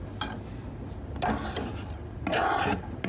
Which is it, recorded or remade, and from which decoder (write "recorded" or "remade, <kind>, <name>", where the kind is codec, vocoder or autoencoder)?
recorded